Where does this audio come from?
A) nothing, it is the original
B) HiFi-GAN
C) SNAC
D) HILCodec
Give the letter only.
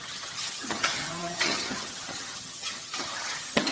B